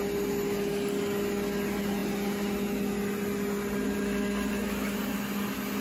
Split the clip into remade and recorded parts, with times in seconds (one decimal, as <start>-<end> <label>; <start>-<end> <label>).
0.0-5.8 recorded